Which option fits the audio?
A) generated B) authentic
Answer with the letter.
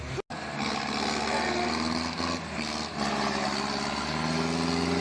B